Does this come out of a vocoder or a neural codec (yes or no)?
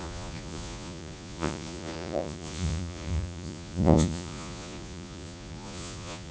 yes